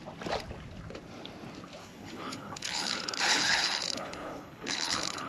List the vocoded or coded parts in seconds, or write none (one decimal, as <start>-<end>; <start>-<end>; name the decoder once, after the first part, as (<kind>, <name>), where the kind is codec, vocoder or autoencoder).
1.8-5.3 (codec, HILCodec)